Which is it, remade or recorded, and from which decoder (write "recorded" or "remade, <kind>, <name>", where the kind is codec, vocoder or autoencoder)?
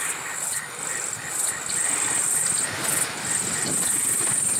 recorded